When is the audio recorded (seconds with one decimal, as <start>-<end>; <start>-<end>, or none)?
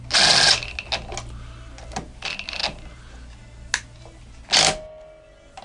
0.0-5.6